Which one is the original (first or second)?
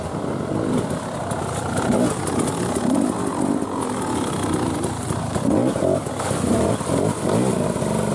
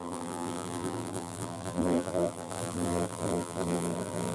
first